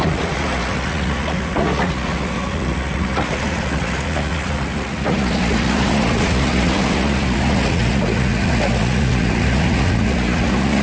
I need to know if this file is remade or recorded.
remade